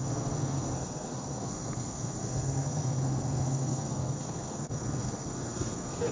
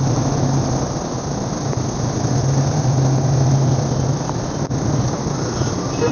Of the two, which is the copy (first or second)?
first